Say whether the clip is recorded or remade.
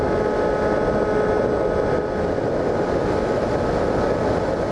recorded